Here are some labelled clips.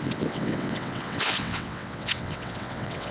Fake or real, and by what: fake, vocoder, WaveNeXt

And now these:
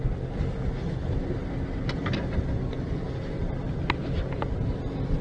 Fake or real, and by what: real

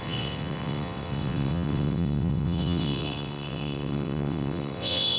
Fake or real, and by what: fake, vocoder, WaveNeXt